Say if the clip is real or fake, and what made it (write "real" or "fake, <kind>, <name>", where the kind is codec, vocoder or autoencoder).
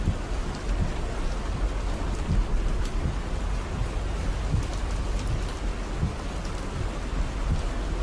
real